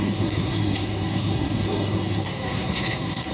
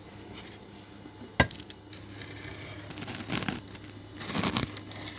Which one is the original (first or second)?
second